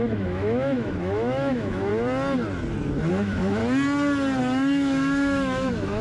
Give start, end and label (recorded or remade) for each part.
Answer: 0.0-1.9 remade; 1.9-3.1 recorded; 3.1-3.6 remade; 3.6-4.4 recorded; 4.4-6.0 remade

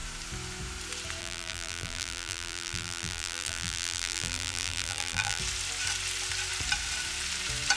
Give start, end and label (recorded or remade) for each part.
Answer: 0.0-1.2 recorded; 1.2-5.4 remade; 5.4-7.8 recorded